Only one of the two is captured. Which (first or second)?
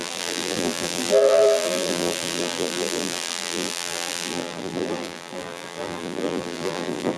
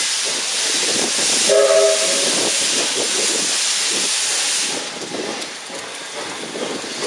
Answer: second